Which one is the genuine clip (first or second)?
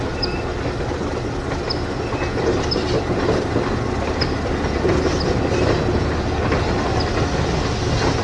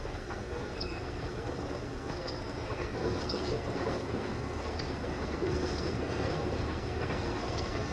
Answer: first